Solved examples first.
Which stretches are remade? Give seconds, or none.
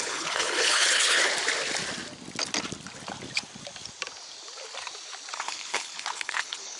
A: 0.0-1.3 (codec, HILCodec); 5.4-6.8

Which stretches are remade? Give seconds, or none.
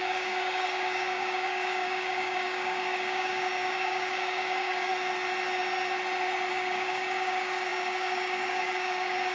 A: 0.0-4.9 (codec, DAC); 6.5-9.3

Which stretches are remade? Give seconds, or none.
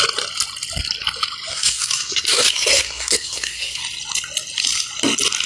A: 1.5-3.8 (codec, SNAC)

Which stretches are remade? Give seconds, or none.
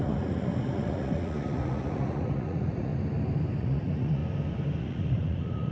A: 0.0-2.9 (vocoder, Vocos); 3.6-4.2; 4.8-5.7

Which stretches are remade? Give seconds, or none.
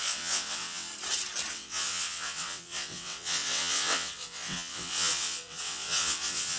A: 0.0-0.9 (vocoder, WaveNeXt); 1.5-6.6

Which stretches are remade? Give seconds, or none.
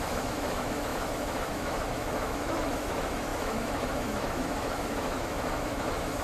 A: 0.0-6.2 (autoencoder, DAC-VAE)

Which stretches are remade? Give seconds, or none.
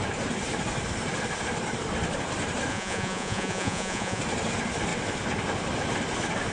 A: 2.7-4.2 (vocoder, Vocos)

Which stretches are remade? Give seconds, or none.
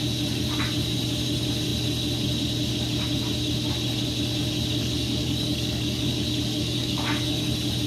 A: 4.8-6.1 (codec, DAC); 6.6-7.5